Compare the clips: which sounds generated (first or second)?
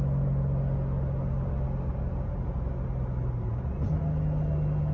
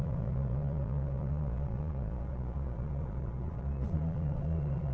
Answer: second